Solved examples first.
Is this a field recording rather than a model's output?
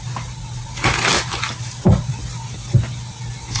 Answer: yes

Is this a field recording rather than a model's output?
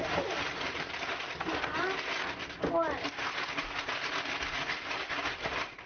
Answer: yes